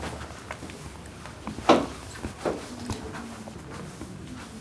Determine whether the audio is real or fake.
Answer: real